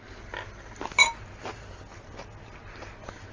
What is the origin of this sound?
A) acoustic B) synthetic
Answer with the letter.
A